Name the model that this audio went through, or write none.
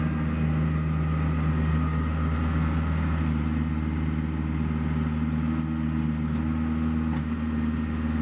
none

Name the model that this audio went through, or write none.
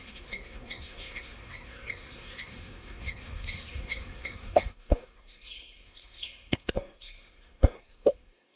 codec, SNAC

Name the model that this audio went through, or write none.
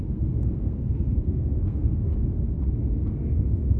codec, SNAC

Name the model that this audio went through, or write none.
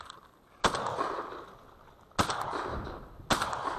none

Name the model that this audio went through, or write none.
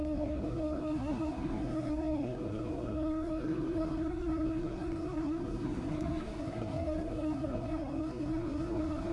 codec, SNAC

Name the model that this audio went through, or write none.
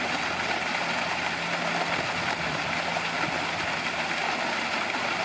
none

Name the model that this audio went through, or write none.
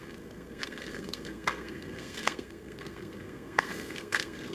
codec, SNAC